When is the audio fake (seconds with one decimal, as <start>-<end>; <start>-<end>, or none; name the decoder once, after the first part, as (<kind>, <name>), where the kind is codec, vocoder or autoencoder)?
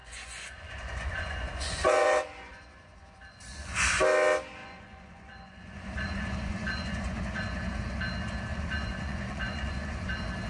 0.0-4.0 (vocoder, Vocos); 4.6-7.7; 8.5-10.1